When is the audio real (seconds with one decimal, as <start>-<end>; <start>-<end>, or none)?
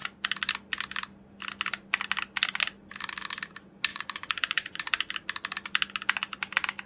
0.0-3.9; 4.8-6.9